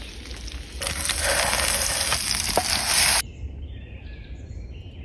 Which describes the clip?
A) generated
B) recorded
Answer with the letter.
B